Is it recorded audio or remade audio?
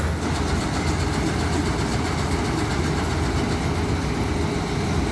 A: recorded